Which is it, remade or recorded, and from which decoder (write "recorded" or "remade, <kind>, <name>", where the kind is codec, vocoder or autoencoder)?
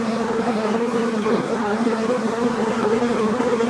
remade, codec, SNAC